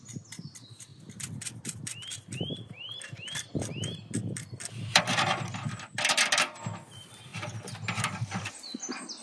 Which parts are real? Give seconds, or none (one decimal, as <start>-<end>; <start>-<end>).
0.0-0.9; 5.0-7.3; 8.5-9.2